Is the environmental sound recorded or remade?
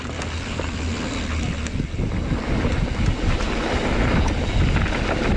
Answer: recorded